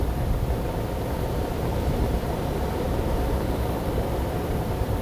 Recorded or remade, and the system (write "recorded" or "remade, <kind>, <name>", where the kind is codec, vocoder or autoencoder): remade, vocoder, BigVGAN v2